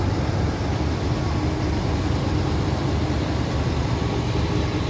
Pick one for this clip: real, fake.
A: real